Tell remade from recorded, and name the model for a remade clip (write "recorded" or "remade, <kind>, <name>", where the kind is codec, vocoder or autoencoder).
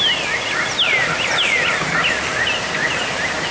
recorded